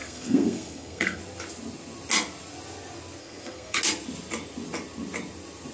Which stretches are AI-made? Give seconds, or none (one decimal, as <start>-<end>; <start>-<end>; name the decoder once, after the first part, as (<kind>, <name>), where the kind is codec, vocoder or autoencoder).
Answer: 0.0-1.2 (codec, SNAC); 3.2-3.8